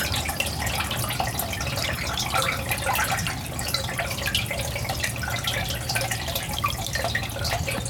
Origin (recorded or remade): recorded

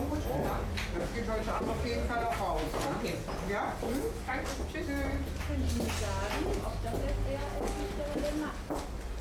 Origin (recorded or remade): recorded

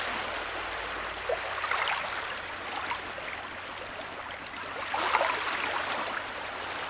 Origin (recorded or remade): recorded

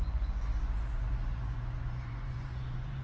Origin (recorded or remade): remade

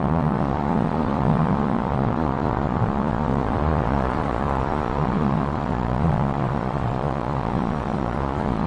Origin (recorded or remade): remade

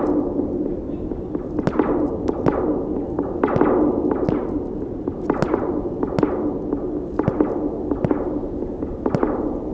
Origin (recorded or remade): recorded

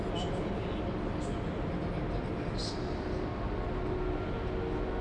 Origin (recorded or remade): recorded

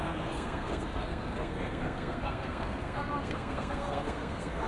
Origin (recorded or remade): remade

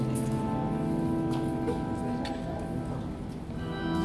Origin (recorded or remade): recorded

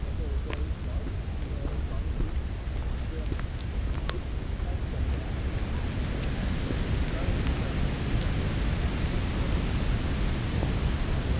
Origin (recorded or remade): recorded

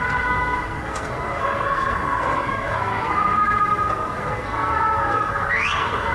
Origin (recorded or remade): remade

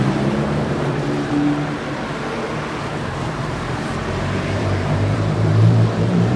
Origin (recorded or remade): remade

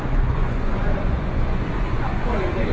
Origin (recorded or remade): remade